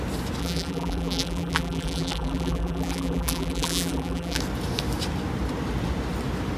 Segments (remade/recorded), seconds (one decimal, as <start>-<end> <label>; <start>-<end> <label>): 0.0-0.4 recorded; 0.4-4.4 remade; 4.4-6.6 recorded